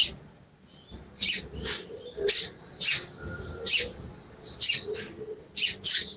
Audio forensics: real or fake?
real